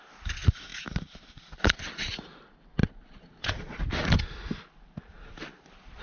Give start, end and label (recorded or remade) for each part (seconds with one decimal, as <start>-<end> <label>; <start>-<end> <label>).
0.0-2.8 recorded; 2.8-3.8 remade; 3.8-6.0 recorded